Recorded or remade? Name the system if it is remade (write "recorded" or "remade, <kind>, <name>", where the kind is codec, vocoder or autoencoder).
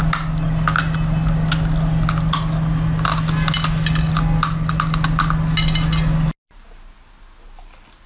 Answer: recorded